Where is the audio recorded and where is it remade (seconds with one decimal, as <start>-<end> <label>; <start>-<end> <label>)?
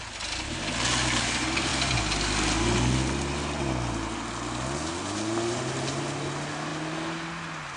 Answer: 0.0-7.8 recorded